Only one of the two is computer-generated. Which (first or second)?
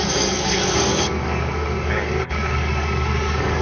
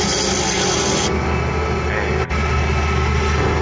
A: first